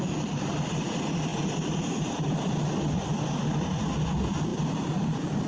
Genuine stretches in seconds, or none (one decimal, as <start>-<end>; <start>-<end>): 0.0-5.5